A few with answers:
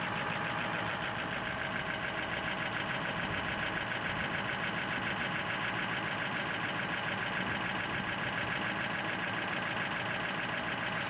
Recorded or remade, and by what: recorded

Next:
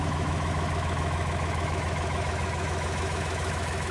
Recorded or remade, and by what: remade, autoencoder, DAC-VAE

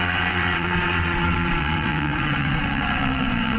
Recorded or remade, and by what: remade, vocoder, WaveNeXt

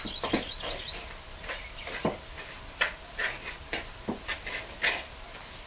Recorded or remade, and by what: recorded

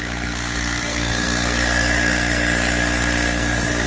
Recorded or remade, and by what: remade, codec, SNAC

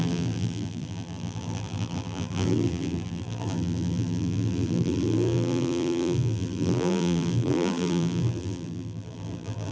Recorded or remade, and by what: remade, vocoder, BigVGAN v2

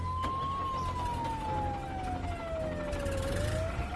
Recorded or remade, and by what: recorded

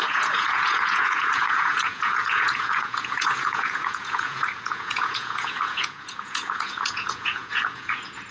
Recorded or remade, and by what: remade, vocoder, Vocos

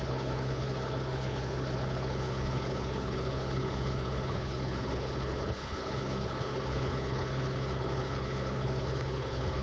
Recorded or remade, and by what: remade, codec, HILCodec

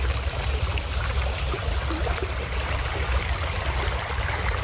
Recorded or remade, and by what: recorded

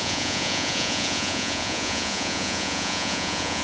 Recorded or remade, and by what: remade, vocoder, Vocos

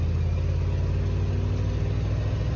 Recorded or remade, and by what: recorded